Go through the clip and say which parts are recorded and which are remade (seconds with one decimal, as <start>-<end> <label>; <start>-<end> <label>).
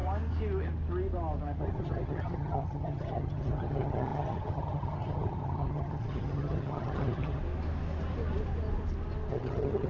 0.0-1.6 recorded; 1.6-7.4 remade; 7.4-9.3 recorded; 9.3-9.9 remade